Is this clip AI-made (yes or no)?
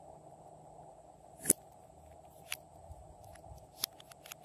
no